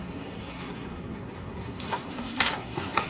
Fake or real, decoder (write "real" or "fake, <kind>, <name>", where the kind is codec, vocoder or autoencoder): fake, codec, SNAC